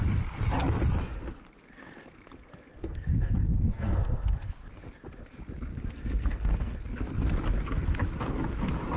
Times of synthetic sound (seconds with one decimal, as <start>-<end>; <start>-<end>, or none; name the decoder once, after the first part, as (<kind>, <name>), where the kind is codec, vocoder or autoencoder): 2.8-4.5 (codec, SNAC); 5.7-6.8